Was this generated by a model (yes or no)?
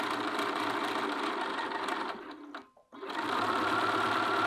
no